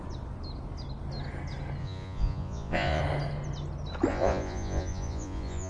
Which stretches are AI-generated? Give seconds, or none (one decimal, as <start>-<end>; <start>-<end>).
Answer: 1.8-3.0; 4.1-5.7